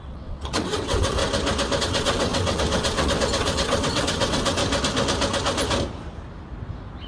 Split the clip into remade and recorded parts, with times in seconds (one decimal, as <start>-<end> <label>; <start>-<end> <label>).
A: 0.0-1.2 remade; 1.2-1.8 recorded; 1.8-4.6 remade; 4.6-7.1 recorded